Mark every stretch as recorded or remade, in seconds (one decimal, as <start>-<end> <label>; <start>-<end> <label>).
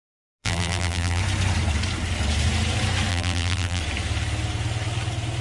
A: 0.0-0.4 recorded; 0.4-1.2 remade; 1.2-3.1 recorded; 3.1-3.8 remade; 3.8-5.4 recorded